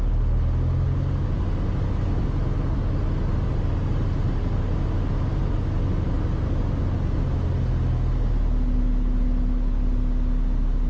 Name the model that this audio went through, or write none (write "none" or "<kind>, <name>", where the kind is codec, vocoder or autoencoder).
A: none